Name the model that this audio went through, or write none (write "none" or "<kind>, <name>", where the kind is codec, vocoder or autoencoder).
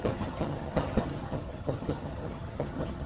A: vocoder, HiFi-GAN